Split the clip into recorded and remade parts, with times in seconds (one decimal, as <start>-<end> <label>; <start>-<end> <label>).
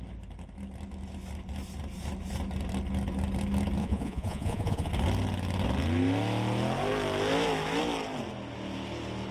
0.0-3.8 recorded; 3.8-4.9 remade; 4.9-9.3 recorded